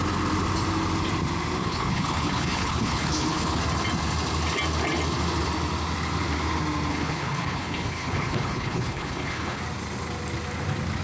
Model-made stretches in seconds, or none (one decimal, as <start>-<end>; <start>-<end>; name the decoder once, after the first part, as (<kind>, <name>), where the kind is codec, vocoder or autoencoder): 1.6-3.6 (codec, HILCodec); 6.9-9.6